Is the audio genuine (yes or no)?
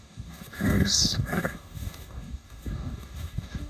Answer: no